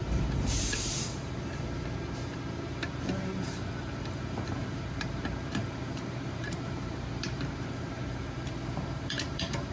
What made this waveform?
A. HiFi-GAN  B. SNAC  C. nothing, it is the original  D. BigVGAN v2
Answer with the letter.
D